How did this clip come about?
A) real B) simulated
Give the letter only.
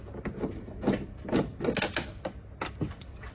A